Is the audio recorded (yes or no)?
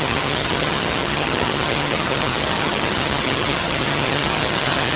no